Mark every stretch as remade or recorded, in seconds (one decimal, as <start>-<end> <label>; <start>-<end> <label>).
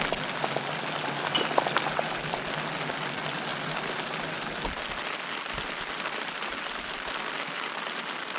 0.0-8.4 recorded